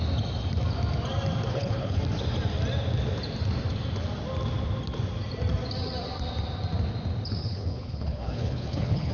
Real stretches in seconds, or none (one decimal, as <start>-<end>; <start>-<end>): 0.0-1.5; 2.0-7.4